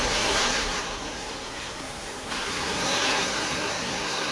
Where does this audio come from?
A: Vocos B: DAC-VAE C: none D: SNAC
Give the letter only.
D